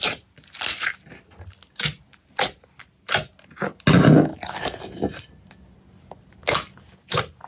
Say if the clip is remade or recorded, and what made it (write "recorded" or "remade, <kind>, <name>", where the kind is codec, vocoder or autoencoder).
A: recorded